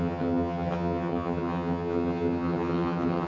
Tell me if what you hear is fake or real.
fake